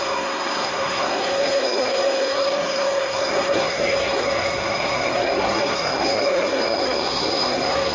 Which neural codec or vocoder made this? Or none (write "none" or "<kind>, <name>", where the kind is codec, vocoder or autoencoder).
codec, SNAC